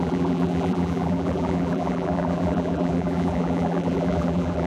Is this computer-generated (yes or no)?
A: yes